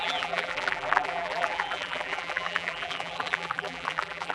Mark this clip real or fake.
fake